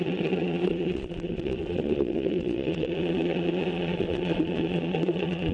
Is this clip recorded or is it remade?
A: remade